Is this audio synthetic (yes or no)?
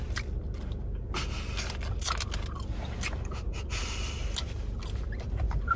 no